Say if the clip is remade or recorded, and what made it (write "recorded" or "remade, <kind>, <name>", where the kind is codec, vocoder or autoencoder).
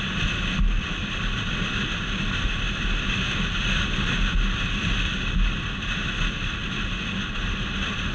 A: recorded